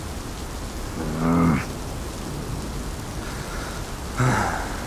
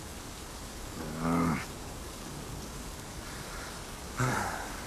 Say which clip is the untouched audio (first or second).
first